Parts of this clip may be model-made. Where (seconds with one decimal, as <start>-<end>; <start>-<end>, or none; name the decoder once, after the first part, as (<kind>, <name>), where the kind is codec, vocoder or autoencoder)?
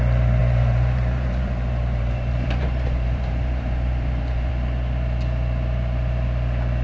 0.4-4.5 (vocoder, BigVGAN v2)